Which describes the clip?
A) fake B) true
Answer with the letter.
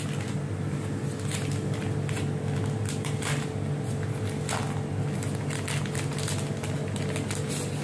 B